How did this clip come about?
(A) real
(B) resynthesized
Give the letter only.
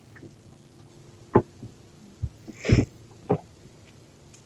A